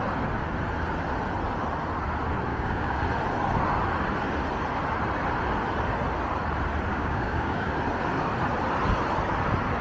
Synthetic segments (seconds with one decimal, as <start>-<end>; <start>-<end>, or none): 2.5-3.0; 6.9-7.7

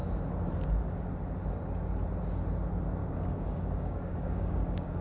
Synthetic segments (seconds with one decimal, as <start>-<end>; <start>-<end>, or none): 3.0-5.0

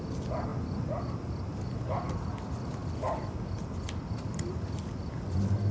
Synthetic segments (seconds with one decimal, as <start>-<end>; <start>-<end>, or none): none

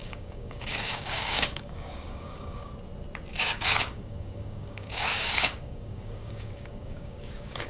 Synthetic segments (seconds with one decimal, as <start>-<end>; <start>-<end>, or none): 0.0-2.7; 3.3-7.7

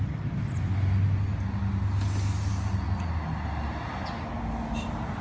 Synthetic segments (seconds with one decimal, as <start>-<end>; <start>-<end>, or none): none

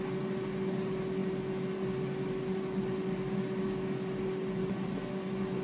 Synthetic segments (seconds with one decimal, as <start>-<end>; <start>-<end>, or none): none

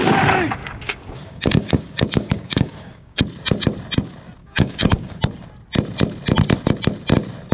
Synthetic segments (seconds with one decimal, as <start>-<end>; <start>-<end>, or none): 0.6-3.2; 4.4-5.2

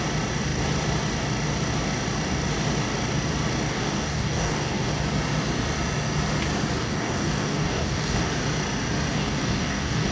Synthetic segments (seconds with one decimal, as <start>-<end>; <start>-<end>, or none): 3.7-4.9; 6.8-8.3; 9.1-10.1